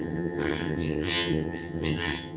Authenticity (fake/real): fake